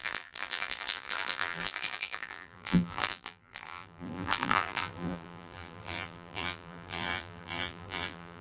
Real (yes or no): no